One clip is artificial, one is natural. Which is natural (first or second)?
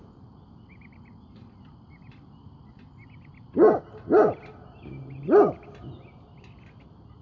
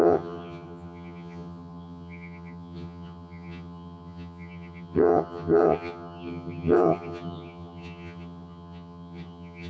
first